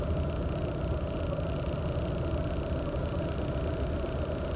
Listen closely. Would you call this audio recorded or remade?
recorded